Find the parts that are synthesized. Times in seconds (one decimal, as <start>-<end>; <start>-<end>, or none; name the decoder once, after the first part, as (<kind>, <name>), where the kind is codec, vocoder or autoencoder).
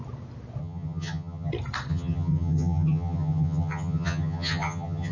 0.6-1.5 (vocoder, HiFi-GAN); 1.9-5.1